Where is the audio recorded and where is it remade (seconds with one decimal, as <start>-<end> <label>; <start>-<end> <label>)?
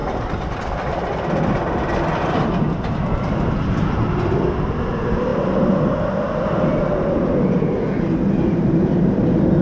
0.0-9.6 recorded